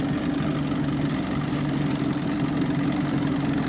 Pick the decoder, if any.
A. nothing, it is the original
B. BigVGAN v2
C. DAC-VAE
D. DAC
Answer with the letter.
A